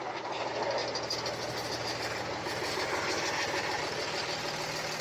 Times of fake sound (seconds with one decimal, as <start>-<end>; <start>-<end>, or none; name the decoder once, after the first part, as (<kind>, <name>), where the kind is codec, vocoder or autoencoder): none